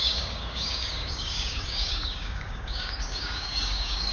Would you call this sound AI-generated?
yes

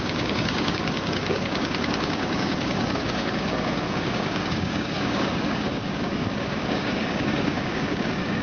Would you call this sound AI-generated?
yes